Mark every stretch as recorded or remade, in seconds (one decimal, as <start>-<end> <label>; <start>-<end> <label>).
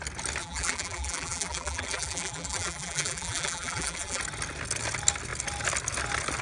0.0-0.4 recorded; 0.4-4.2 remade; 4.2-6.4 recorded